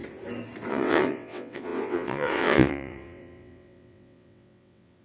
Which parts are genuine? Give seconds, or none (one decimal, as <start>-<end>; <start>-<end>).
0.0-0.7

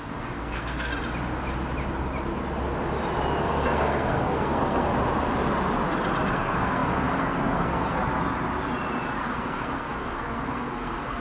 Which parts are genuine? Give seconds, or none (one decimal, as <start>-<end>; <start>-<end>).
0.9-3.4; 4.9-6.3; 8.0-9.2

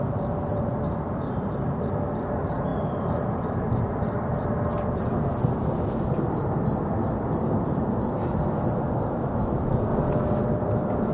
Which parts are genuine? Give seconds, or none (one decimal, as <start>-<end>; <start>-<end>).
0.0-11.1

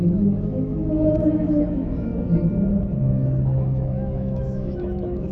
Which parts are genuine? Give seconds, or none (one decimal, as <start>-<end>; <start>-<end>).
2.1-3.0

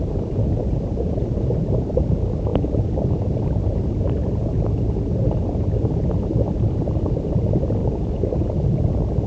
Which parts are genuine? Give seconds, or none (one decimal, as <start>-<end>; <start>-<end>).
0.0-9.3

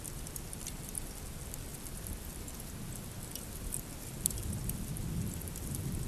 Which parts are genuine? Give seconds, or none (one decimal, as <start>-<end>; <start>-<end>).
1.7-4.2